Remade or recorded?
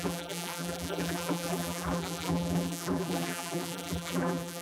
remade